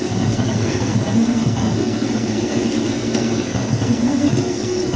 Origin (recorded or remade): remade